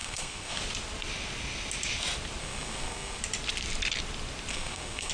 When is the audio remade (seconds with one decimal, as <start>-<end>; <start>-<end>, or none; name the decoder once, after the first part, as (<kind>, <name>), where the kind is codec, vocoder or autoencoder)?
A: 0.0-0.6 (codec, SNAC); 2.4-3.2; 4.5-5.1